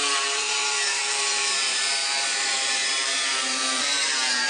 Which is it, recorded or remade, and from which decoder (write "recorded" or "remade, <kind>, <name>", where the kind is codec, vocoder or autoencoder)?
remade, vocoder, BigVGAN v2